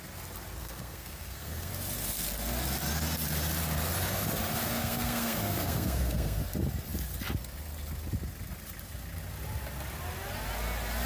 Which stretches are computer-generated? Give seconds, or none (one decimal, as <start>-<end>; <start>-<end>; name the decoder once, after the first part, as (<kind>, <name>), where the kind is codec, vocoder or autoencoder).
0.6-1.7 (codec, SNAC); 4.6-6.4